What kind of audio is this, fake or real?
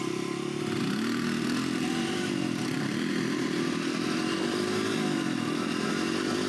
fake